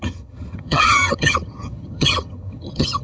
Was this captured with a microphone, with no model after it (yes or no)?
no